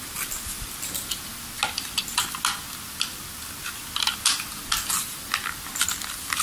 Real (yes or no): yes